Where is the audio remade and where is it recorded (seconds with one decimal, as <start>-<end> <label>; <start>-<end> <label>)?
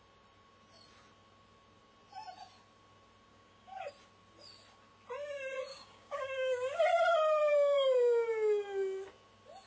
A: 0.0-3.3 recorded; 3.3-3.9 remade; 3.9-5.7 recorded; 5.7-6.8 remade; 6.8-9.7 recorded